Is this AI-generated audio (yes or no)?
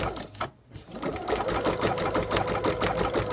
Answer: no